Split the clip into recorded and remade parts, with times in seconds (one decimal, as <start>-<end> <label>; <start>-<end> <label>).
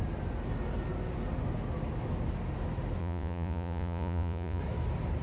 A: 0.0-3.0 recorded; 3.0-4.6 remade; 4.6-5.2 recorded